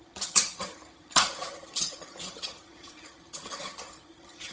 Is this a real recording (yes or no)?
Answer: no